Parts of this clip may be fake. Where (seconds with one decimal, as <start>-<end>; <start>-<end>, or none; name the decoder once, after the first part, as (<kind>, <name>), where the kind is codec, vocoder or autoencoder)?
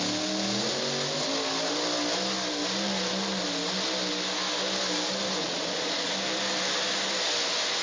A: 5.4-6.1 (vocoder, Vocos)